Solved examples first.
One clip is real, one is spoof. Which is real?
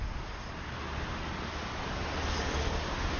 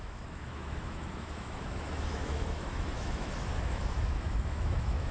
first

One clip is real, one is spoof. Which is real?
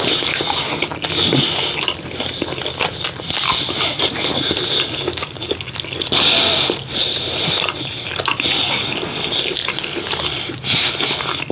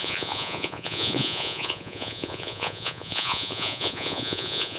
first